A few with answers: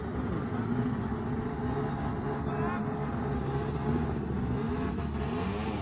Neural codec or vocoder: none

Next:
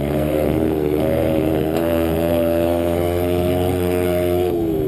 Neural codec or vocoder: codec, SNAC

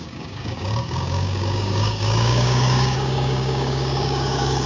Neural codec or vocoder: codec, DAC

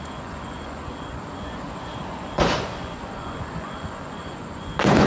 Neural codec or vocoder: vocoder, Vocos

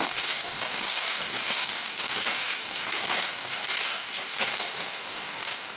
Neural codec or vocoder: codec, DAC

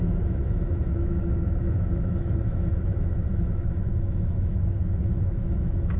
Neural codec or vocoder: autoencoder, DAC-VAE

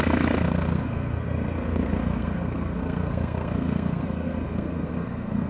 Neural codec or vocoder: codec, SNAC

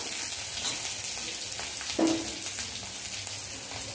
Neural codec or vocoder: none